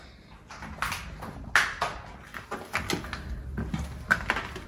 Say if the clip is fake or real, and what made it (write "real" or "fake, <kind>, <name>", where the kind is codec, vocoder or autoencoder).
real